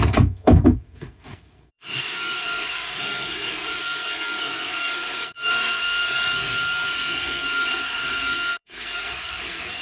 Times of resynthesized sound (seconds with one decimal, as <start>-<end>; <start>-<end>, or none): 0.0-9.8